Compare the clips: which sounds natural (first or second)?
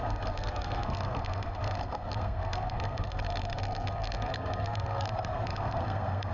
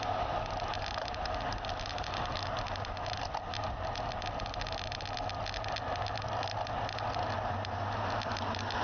second